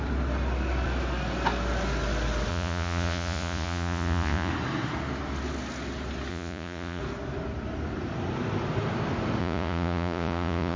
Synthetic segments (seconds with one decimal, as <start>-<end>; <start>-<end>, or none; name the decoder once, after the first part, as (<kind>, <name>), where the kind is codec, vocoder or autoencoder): 2.5-4.5 (vocoder, Vocos); 6.3-7.0; 9.4-10.8